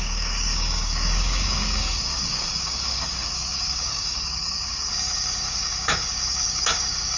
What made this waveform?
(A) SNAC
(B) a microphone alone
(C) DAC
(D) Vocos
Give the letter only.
C